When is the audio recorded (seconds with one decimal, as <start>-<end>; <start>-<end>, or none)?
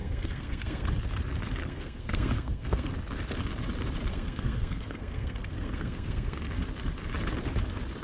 0.9-1.6; 2.9-4.1; 6.5-8.0